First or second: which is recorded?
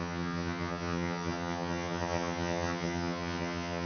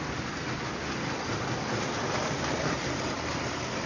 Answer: second